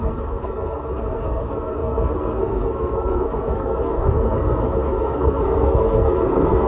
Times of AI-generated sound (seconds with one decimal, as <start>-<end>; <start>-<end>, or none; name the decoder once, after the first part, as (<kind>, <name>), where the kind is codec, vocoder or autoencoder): 0.0-6.7 (codec, SNAC)